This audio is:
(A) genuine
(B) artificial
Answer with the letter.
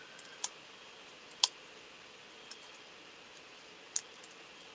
A